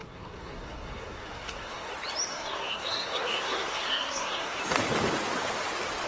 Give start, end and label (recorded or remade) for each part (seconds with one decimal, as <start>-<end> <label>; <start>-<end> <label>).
0.0-1.9 remade; 1.9-2.3 recorded; 2.3-4.6 remade; 4.6-6.1 recorded